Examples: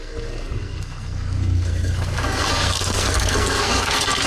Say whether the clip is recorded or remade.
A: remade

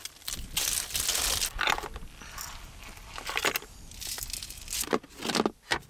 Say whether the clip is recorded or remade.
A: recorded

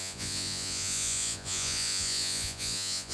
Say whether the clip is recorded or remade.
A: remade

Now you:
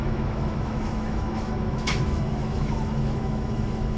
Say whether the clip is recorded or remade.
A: remade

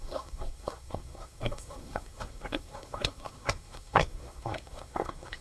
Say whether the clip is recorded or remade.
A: remade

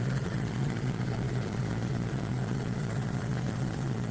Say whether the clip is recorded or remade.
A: remade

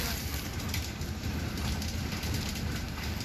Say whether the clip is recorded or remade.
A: recorded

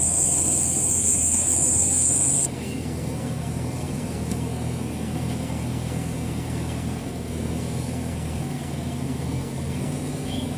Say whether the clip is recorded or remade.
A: remade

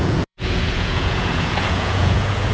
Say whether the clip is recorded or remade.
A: remade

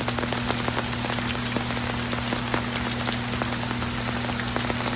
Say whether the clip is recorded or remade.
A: recorded